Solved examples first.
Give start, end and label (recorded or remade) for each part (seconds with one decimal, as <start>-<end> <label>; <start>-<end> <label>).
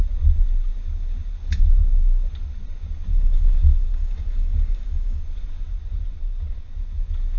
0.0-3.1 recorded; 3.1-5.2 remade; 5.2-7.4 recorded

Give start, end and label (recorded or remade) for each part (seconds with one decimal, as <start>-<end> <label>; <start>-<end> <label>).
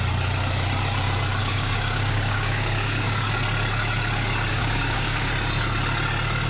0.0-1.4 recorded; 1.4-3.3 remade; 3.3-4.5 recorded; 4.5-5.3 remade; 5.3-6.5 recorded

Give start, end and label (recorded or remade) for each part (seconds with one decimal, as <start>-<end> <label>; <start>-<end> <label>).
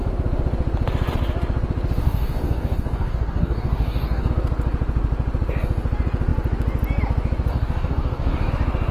0.0-2.0 recorded; 2.0-4.3 remade; 4.3-7.5 recorded; 7.5-8.5 remade; 8.5-8.9 recorded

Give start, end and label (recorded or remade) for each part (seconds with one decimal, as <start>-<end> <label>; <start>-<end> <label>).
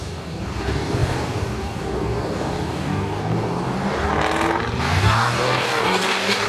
0.0-4.1 remade; 4.1-4.8 recorded; 4.8-6.5 remade